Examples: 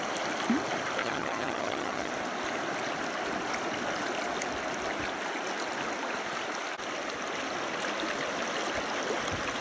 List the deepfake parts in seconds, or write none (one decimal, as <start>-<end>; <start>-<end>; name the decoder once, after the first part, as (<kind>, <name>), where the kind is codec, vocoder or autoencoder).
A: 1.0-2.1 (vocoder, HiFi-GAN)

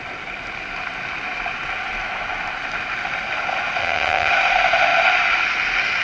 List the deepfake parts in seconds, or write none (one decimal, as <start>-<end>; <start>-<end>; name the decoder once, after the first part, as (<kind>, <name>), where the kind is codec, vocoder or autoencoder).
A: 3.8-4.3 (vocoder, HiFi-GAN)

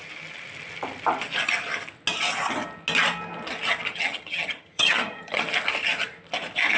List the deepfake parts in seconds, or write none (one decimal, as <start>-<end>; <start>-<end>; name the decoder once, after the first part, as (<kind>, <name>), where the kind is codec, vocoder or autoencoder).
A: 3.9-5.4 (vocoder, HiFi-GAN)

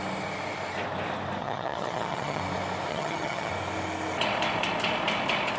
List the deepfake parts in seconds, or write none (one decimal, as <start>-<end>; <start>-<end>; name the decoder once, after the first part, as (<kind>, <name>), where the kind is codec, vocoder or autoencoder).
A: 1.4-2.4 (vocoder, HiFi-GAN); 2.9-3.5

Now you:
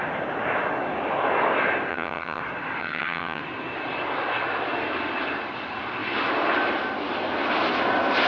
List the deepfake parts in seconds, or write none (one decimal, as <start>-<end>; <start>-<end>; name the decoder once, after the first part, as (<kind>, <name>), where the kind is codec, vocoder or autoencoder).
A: 1.9-2.4 (vocoder, HiFi-GAN); 2.8-3.4

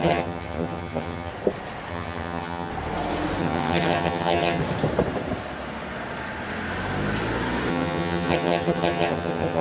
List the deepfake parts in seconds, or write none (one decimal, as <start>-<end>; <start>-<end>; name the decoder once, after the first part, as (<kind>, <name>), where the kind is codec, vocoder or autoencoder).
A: 0.0-1.3 (vocoder, HiFi-GAN); 1.9-2.7; 3.4-4.6; 7.7-9.6

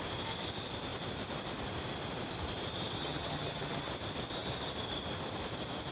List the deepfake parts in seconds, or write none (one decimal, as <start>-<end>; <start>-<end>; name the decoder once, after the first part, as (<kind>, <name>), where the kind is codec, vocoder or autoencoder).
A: 3.0-3.9 (vocoder, HiFi-GAN)